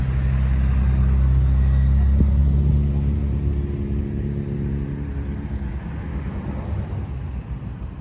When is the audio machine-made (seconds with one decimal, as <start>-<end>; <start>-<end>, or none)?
none